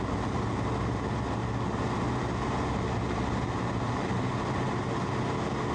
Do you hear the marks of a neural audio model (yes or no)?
no